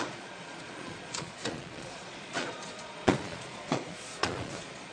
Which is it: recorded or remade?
remade